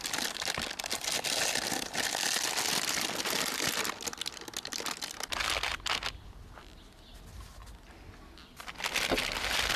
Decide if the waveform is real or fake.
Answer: real